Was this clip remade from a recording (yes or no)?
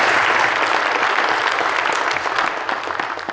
no